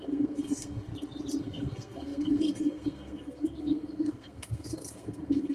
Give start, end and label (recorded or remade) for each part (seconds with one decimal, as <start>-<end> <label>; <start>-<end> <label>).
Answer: 0.0-0.9 remade; 0.9-1.4 recorded; 1.4-5.5 remade